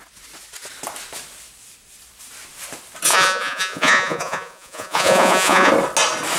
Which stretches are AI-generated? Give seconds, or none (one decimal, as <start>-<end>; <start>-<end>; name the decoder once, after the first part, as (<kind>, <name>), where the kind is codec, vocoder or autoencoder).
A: 3.1-5.7 (vocoder, Vocos)

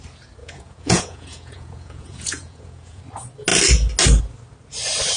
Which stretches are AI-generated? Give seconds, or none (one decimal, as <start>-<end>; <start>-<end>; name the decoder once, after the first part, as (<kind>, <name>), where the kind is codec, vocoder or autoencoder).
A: 0.4-3.0 (vocoder, Vocos)

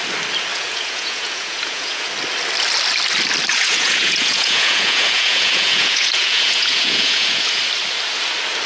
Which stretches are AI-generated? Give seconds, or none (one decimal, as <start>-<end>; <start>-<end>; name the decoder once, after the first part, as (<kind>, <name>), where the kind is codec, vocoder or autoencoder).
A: 0.5-2.1 (vocoder, Vocos); 3.5-7.6

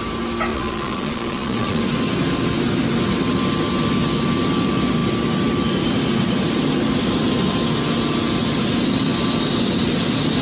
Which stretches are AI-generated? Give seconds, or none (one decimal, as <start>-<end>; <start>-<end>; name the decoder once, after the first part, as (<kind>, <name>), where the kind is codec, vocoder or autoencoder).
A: 0.5-1.8 (vocoder, Vocos)

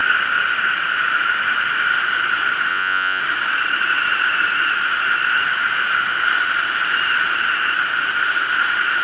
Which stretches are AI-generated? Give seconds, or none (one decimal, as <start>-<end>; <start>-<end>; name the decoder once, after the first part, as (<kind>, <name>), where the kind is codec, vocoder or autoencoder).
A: 2.7-3.2 (vocoder, Vocos)